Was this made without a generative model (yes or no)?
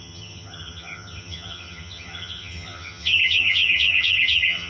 no